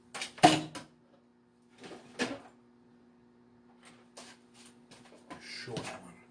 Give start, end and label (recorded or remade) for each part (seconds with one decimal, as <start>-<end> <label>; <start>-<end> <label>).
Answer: 0.0-6.3 recorded